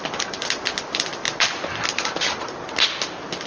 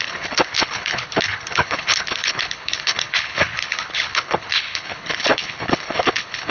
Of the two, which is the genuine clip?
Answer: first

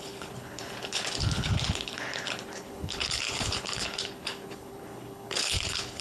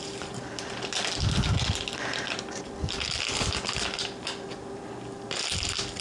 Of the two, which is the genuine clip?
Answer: second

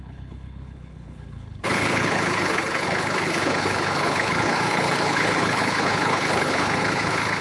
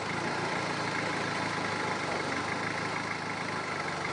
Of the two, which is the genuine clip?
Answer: second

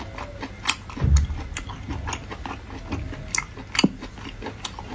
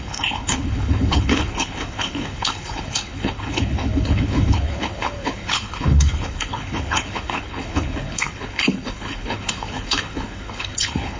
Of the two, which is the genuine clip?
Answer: first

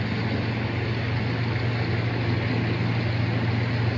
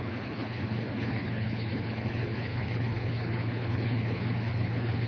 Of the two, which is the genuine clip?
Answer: first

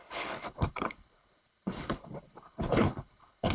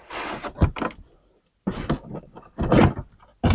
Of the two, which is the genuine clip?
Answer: second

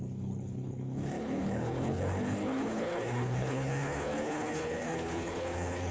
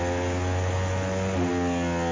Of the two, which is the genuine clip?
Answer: second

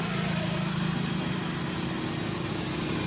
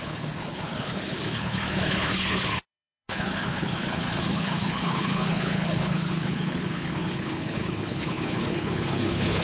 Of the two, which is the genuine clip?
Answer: first